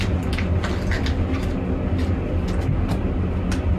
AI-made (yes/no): no